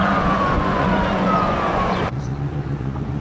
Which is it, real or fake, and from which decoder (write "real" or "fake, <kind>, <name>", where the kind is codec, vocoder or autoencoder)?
fake, vocoder, Vocos